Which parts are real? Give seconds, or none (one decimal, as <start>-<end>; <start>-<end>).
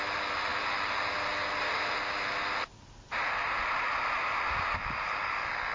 0.0-5.7